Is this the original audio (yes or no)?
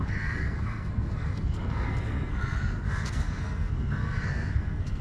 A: no